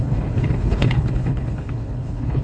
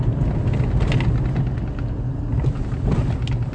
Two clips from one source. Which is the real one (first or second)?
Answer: second